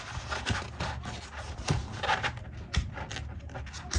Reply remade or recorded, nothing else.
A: recorded